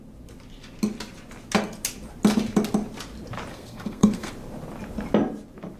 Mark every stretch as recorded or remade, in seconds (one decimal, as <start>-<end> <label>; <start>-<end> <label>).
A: 0.0-3.5 recorded; 3.5-4.3 remade; 4.3-5.8 recorded